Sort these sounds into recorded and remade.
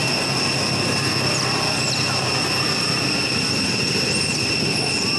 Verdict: recorded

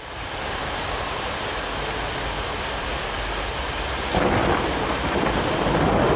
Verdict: recorded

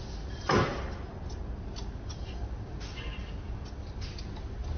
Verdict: recorded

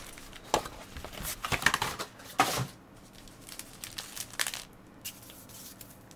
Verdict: recorded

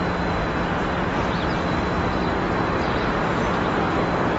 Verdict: remade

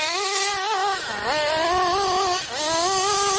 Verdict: recorded